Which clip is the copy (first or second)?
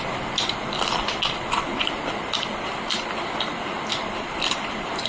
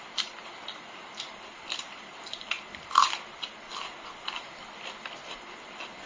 first